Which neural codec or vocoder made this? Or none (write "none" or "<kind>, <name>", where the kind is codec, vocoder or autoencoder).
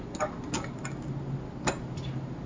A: none